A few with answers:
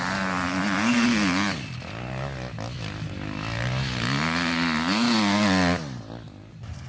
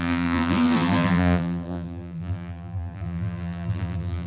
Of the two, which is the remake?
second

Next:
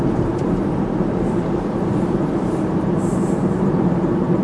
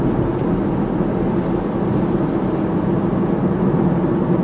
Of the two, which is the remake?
first